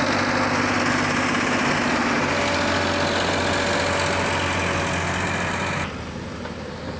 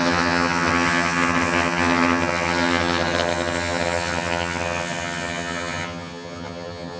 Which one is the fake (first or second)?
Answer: second